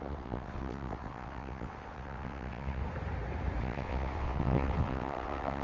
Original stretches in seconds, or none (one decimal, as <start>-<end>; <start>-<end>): 2.8-3.6